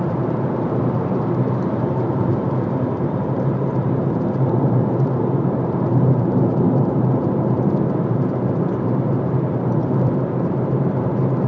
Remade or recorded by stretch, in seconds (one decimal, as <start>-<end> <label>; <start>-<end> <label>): 0.0-9.8 remade; 9.8-10.5 recorded; 10.5-11.5 remade